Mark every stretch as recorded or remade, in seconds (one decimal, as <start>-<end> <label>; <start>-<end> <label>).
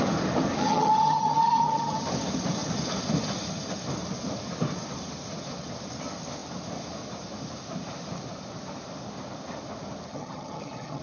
0.0-0.6 recorded; 0.6-2.0 remade; 2.0-10.1 recorded; 10.1-11.0 remade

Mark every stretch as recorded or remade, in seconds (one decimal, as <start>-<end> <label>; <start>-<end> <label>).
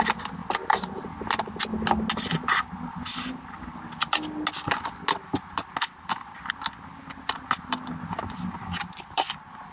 0.0-9.7 recorded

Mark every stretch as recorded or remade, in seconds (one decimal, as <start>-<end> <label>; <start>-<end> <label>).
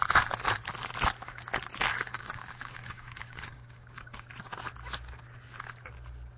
0.0-2.1 recorded; 2.1-4.3 remade; 4.3-6.4 recorded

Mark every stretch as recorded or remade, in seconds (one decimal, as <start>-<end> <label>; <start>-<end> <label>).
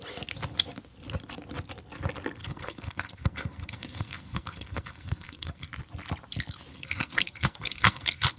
0.0-2.4 recorded; 2.4-5.7 remade; 5.7-6.7 recorded; 6.7-8.4 remade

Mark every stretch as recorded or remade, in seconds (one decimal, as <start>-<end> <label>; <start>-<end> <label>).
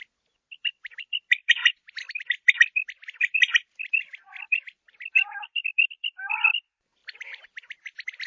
0.0-8.3 recorded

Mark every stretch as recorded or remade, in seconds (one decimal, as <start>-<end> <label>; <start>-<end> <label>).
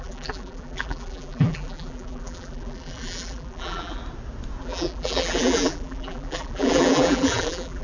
0.0-4.0 remade; 4.0-4.6 recorded; 4.6-7.8 remade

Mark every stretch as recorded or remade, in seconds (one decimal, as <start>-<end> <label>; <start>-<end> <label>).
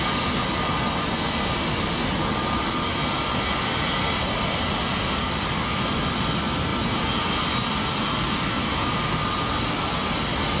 0.0-10.6 recorded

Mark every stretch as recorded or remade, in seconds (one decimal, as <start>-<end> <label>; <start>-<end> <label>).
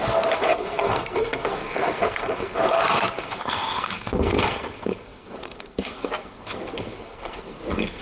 0.0-8.0 remade